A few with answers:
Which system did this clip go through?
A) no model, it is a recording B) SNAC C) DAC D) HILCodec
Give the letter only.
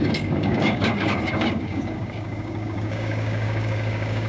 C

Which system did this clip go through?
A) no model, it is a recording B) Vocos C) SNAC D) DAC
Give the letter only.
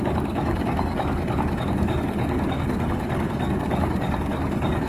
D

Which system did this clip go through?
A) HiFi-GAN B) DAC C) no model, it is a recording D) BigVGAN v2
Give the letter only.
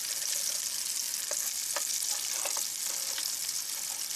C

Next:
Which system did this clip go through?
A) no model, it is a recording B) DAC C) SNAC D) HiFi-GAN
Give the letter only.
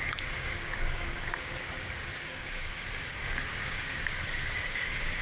B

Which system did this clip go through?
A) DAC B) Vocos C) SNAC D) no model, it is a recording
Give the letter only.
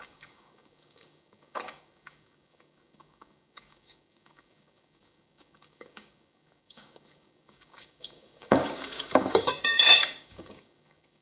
A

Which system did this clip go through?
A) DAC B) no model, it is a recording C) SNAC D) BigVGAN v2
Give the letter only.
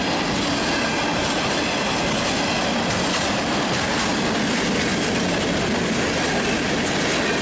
B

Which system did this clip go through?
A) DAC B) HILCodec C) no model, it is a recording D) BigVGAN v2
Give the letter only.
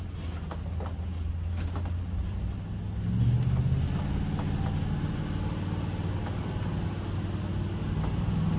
C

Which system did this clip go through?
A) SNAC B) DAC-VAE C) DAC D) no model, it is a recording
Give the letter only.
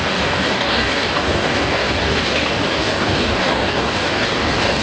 C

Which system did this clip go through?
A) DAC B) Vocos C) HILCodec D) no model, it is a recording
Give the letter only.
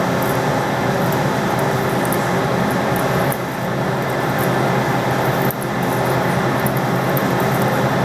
D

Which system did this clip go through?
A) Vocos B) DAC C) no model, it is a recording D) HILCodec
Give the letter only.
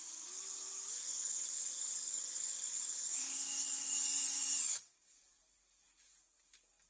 B